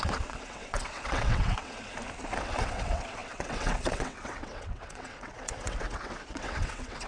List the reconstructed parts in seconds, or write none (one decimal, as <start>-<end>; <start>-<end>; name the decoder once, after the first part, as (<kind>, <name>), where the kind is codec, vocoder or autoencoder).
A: 0.0-1.9 (vocoder, WaveNeXt); 2.4-7.1